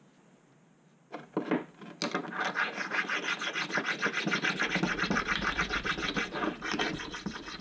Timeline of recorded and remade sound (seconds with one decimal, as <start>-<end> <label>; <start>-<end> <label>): 0.0-7.6 recorded